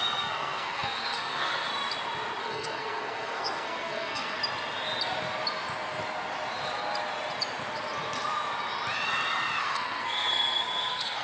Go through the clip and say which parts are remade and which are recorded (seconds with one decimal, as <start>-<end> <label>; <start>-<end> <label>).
0.0-1.7 remade; 1.7-2.4 recorded; 2.4-4.4 remade; 4.4-9.6 recorded; 9.6-11.2 remade